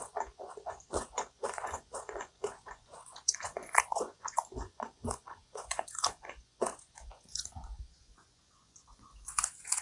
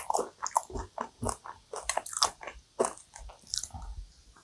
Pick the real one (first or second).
second